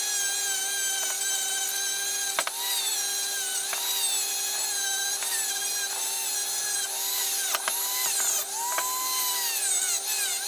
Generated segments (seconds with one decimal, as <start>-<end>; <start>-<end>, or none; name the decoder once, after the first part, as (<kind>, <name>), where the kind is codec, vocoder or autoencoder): none